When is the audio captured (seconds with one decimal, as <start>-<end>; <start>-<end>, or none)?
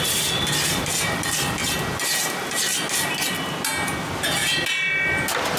0.0-4.4